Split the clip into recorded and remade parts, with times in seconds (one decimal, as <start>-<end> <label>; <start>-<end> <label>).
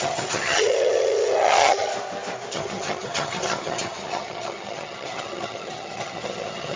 0.0-1.9 remade; 1.9-2.5 recorded; 2.5-6.8 remade